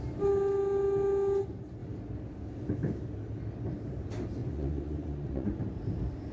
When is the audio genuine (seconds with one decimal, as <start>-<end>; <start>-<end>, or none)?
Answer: 0.0-4.4; 5.6-6.3